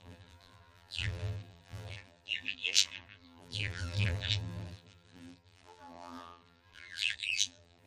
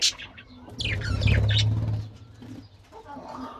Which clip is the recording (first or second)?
second